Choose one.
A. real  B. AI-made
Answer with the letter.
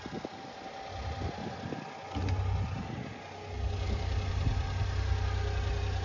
A